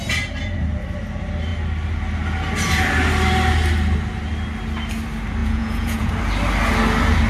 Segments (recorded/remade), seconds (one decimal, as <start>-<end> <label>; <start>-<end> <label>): 0.0-5.4 recorded; 5.4-6.1 remade; 6.1-7.3 recorded